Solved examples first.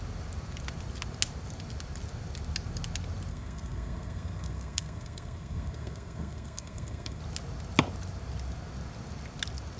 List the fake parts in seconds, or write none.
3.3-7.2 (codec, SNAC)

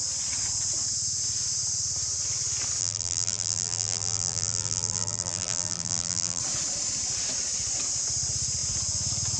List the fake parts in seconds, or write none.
2.8-6.4 (vocoder, BigVGAN v2)

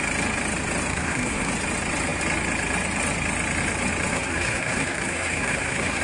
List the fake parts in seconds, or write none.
0.9-1.5 (codec, SNAC); 4.1-6.0